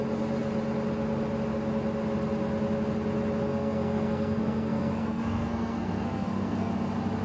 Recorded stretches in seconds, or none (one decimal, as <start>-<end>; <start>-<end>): 0.0-3.5; 6.7-7.2